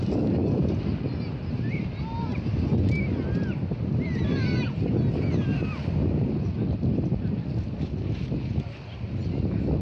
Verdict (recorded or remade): recorded